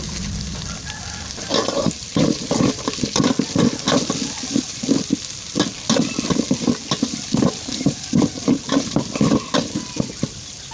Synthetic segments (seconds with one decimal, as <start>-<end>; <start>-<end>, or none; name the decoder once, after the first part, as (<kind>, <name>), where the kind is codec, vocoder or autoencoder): 7.7-9.0 (vocoder, BigVGAN v2)